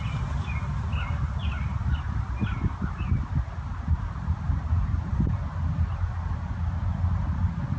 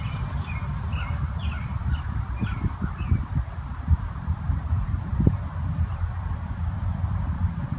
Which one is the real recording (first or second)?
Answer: first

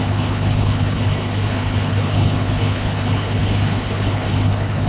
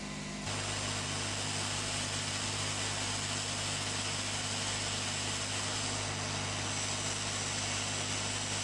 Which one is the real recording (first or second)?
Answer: second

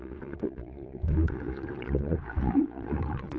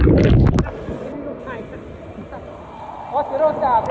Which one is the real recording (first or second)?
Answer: second